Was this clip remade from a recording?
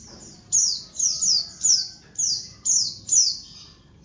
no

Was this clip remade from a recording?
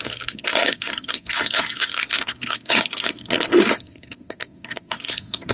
yes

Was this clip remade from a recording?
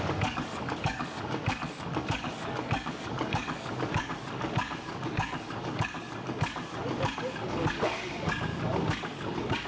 yes